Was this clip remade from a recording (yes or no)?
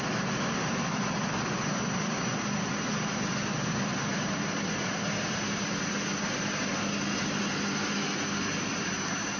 no